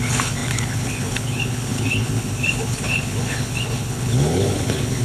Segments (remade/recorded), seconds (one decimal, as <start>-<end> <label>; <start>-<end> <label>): 0.0-5.0 remade